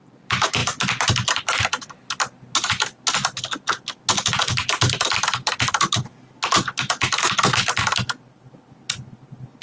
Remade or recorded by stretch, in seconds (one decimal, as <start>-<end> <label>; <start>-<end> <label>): 0.0-9.6 recorded